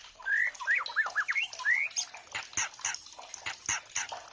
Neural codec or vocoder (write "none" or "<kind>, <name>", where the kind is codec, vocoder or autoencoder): none